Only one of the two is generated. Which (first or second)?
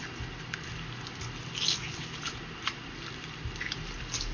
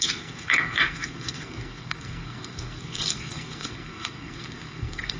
second